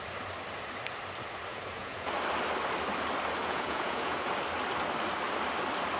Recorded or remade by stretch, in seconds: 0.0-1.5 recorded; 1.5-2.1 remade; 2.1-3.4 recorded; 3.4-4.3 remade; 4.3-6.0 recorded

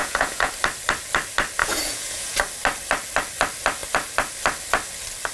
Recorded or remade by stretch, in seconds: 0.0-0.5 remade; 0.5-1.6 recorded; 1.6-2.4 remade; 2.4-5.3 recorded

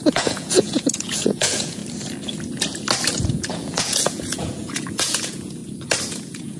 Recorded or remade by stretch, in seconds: 0.0-1.8 remade; 1.8-3.2 recorded; 3.2-5.6 remade; 5.6-6.1 recorded; 6.1-6.6 remade

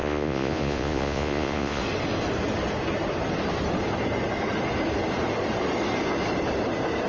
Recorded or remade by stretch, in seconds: 0.0-1.8 remade; 1.8-7.1 recorded

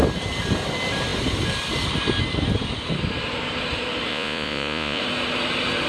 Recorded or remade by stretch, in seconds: 0.0-4.1 recorded; 4.1-5.0 remade; 5.0-5.9 recorded

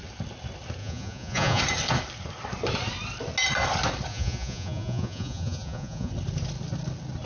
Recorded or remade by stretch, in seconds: 0.0-0.8 recorded; 0.8-1.6 remade; 1.6-4.1 recorded; 4.1-6.1 remade; 6.1-7.2 recorded